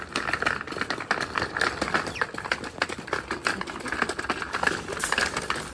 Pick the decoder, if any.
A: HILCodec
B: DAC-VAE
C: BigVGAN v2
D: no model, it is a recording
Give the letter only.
D